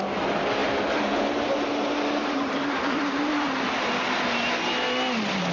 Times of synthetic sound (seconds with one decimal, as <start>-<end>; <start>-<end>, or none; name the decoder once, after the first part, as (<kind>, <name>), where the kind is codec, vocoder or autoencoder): 0.6-3.9 (vocoder, BigVGAN v2)